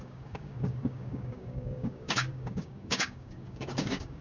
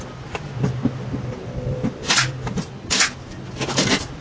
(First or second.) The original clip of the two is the second